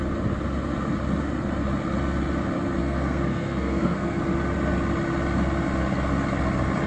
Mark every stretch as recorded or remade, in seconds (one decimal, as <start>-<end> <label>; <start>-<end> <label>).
0.0-2.8 recorded; 2.8-4.2 remade; 4.2-6.9 recorded